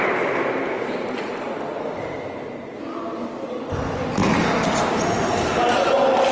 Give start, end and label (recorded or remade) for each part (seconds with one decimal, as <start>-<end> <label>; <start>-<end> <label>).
0.0-6.3 recorded